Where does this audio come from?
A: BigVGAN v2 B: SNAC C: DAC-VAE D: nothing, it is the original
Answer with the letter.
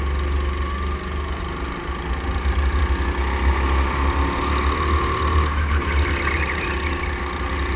D